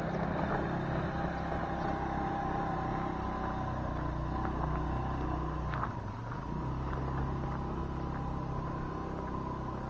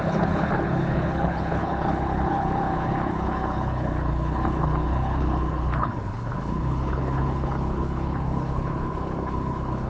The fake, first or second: second